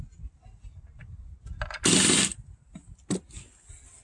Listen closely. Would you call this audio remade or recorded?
recorded